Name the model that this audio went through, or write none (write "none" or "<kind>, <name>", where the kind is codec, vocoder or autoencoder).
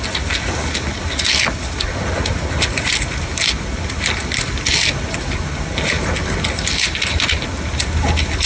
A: none